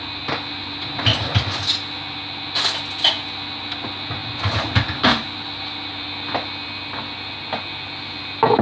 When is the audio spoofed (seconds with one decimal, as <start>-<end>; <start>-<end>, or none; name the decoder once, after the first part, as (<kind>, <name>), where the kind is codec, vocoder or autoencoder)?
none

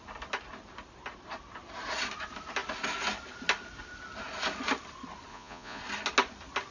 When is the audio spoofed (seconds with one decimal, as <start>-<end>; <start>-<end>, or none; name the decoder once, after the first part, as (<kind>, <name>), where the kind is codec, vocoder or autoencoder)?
5.3-5.8 (vocoder, Vocos)

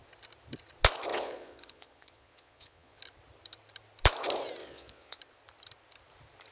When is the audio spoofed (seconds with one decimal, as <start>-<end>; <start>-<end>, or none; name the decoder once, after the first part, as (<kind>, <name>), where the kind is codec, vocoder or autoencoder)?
1.1-3.0 (vocoder, Vocos); 4.6-5.2

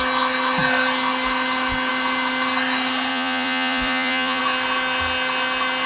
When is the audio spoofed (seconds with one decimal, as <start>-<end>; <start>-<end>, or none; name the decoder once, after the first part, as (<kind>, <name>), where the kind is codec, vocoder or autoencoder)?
3.1-4.4 (vocoder, Vocos)

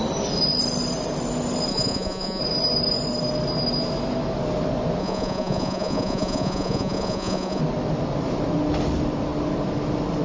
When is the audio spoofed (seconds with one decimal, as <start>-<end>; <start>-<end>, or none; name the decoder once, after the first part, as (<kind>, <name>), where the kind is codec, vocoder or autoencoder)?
1.7-2.4 (vocoder, Vocos); 5.0-7.6

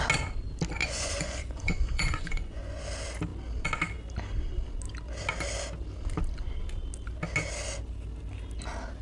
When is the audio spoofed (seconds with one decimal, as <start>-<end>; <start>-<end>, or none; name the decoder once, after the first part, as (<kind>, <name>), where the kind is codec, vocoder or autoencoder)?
0.8-2.8 (vocoder, Vocos)